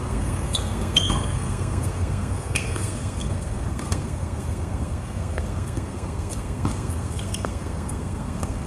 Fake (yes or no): yes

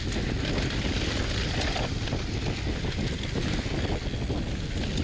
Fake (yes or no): no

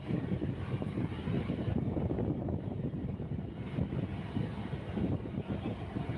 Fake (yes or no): yes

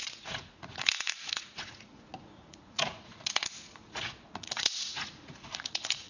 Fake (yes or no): yes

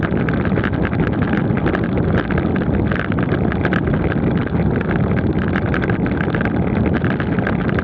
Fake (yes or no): no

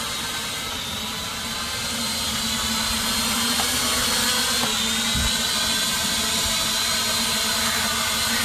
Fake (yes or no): no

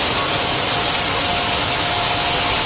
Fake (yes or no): no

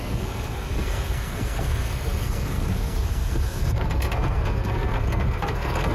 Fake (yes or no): yes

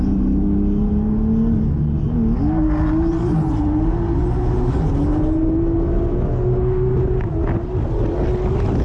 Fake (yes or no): no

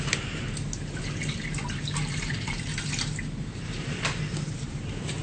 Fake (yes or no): yes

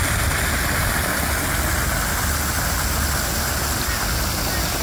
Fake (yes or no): no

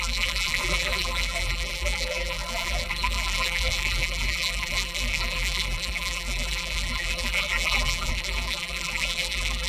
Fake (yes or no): yes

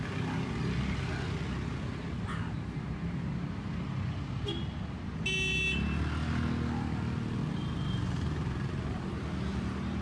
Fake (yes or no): no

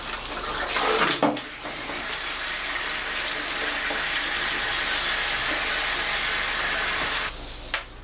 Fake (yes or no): no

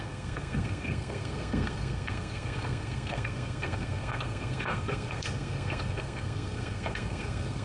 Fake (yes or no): yes